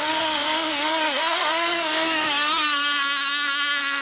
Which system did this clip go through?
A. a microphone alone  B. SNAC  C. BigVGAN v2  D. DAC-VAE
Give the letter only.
B